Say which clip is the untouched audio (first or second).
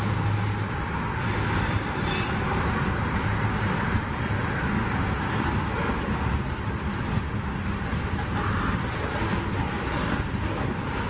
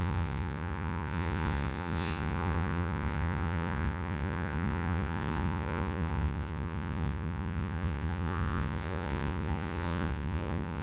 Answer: first